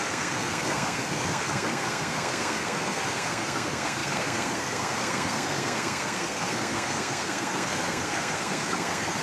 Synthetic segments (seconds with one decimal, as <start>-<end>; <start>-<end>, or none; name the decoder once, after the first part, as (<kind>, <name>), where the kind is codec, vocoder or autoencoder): 0.0-9.2 (codec, SNAC)